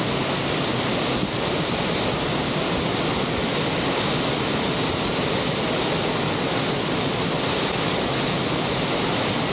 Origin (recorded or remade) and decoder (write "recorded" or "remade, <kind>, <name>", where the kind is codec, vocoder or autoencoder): recorded